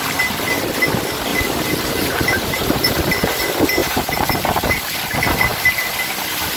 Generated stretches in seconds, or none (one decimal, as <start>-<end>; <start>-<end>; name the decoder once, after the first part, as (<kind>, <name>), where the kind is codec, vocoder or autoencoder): 1.3-3.0 (vocoder, BigVGAN v2); 3.8-4.8